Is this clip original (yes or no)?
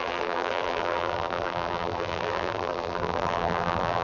no